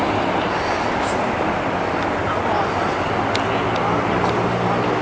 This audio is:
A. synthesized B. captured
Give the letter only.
B